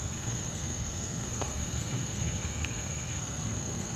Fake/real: fake